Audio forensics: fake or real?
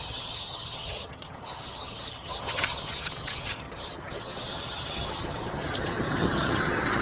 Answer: fake